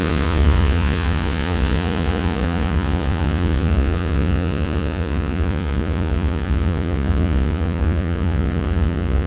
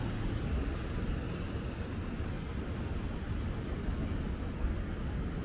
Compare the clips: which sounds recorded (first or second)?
second